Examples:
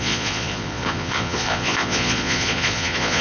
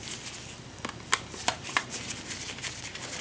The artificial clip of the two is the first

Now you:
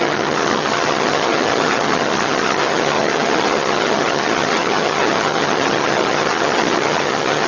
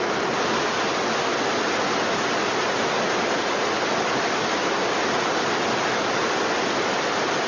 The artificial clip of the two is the first